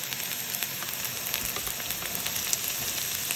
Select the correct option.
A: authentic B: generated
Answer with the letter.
A